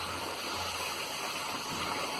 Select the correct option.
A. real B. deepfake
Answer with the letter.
A